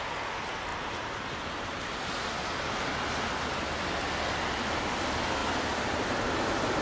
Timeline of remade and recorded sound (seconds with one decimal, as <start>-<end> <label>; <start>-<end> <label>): 0.0-5.4 recorded; 5.4-6.1 remade; 6.1-6.8 recorded